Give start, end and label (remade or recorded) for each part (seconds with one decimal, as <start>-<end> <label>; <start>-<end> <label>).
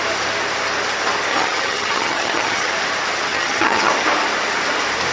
0.0-1.3 recorded; 1.3-2.7 remade; 2.7-3.3 recorded; 3.3-3.9 remade; 3.9-5.1 recorded